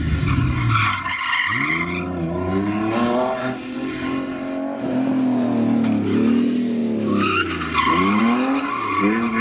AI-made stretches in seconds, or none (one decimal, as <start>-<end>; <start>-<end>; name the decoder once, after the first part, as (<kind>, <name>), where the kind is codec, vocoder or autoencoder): none